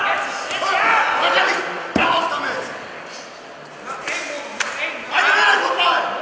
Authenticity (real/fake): real